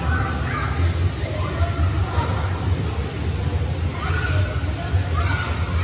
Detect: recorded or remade recorded